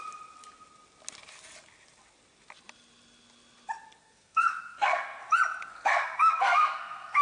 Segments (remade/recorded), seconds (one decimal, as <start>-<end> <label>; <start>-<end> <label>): 0.0-4.0 recorded; 4.0-5.2 remade; 5.2-5.7 recorded; 5.7-7.2 remade